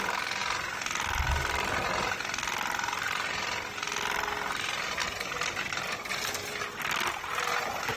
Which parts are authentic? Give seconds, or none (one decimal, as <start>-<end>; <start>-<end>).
0.0-8.0